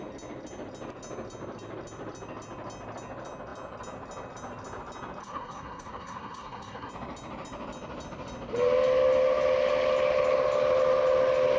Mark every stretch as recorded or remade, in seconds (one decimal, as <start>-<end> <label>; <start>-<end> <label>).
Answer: 0.0-5.2 recorded; 5.2-6.9 remade; 6.9-11.6 recorded